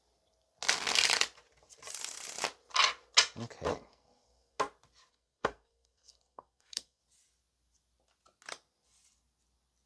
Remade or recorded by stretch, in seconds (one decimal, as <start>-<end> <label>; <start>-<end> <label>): 0.0-3.7 recorded; 3.7-4.6 remade; 4.6-5.1 recorded; 5.1-7.0 remade; 7.0-9.9 recorded